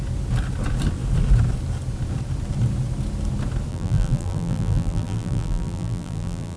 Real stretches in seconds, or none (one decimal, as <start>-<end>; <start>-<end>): 0.0-3.7